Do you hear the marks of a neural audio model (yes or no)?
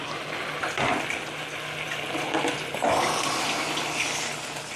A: no